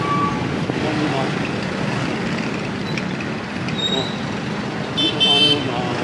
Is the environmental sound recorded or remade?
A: recorded